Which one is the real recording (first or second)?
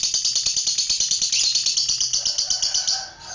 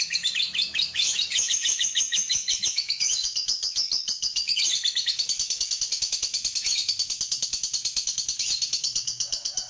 first